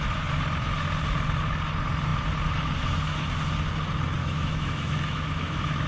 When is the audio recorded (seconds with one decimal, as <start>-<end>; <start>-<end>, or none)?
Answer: 0.0-4.2